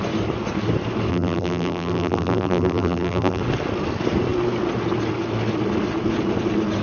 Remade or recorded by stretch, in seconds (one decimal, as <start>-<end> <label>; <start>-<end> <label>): 0.0-1.1 recorded; 1.1-3.4 remade; 3.4-6.8 recorded